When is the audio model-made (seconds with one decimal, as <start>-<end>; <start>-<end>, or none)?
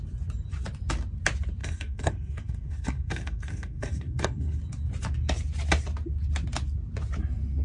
1.6-4.6